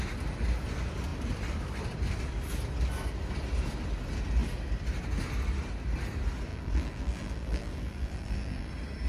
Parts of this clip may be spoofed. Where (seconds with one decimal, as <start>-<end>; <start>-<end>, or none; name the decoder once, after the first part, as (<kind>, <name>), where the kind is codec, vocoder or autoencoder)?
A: 6.5-8.7 (vocoder, BigVGAN v2)